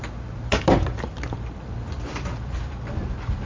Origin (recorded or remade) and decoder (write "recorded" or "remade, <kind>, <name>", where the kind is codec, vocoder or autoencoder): remade, vocoder, BigVGAN v2